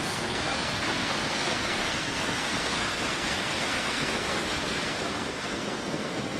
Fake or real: fake